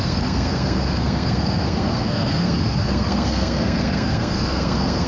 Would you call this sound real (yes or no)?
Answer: no